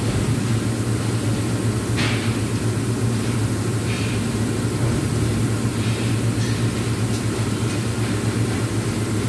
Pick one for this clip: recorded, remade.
recorded